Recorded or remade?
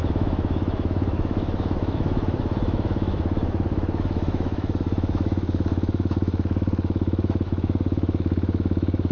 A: remade